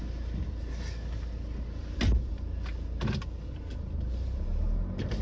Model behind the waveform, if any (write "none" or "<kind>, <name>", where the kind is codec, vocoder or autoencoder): none